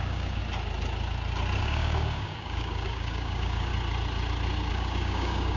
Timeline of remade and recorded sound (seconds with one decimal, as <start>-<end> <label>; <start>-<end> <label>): 0.0-0.4 remade; 0.4-1.6 recorded; 1.6-3.7 remade; 3.7-4.7 recorded; 4.7-5.6 remade